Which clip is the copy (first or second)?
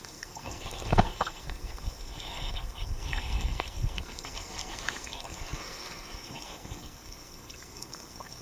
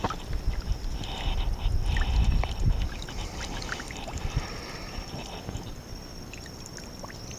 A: first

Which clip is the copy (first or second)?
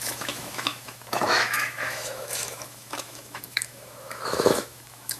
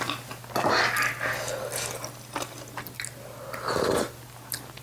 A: first